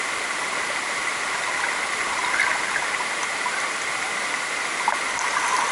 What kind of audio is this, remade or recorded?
recorded